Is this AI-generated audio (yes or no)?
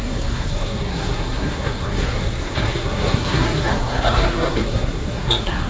yes